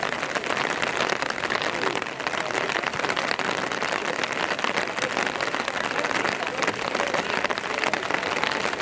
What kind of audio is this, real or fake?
real